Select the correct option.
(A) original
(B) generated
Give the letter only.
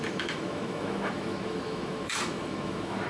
B